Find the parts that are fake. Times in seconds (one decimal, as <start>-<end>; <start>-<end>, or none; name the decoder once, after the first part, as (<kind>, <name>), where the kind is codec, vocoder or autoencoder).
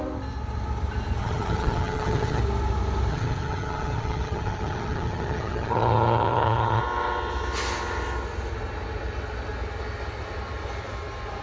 1.2-2.4 (vocoder, HiFi-GAN); 3.1-6.8